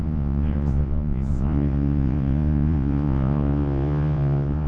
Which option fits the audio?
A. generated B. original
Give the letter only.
A